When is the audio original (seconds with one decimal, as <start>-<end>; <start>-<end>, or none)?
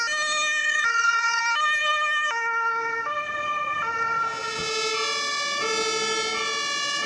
0.0-0.6; 1.4-7.1